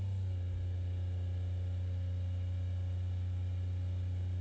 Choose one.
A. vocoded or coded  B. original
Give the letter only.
B